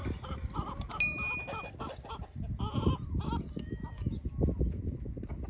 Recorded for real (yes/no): yes